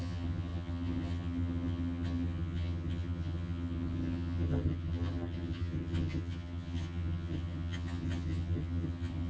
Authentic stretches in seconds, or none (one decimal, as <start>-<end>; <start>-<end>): none